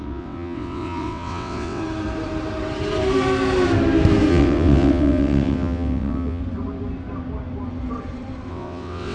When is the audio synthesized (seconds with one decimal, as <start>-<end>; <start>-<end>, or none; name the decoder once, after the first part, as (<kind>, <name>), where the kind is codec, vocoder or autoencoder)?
0.0-1.8 (vocoder, WaveNeXt); 4.3-6.4; 8.5-9.1